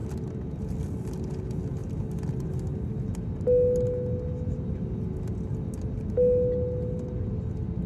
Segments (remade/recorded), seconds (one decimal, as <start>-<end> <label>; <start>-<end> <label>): 0.0-7.9 recorded